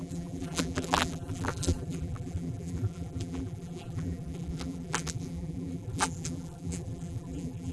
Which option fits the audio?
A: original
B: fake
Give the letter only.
B